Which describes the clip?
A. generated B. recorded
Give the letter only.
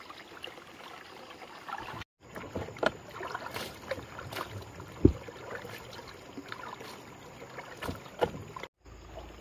B